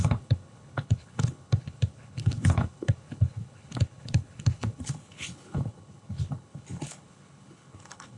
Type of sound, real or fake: fake